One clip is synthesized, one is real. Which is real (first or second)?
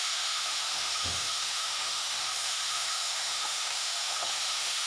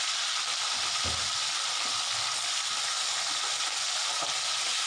second